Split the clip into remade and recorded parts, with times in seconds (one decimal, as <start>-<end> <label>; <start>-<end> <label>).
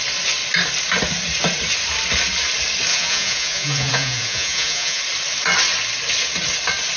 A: 0.0-2.9 recorded; 2.9-5.0 remade; 5.0-7.0 recorded